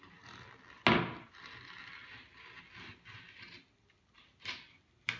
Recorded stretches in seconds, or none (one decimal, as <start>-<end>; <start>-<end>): 0.0-5.2